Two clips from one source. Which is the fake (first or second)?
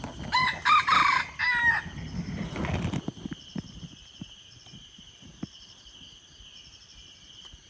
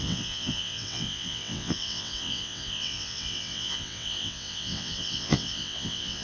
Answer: second